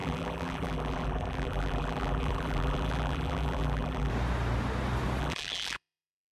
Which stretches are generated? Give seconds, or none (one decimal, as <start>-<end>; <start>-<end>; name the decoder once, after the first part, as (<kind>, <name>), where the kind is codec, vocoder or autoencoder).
0.0-4.1 (vocoder, BigVGAN v2); 5.2-6.3